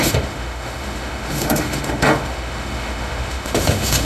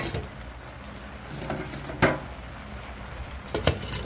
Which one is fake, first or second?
first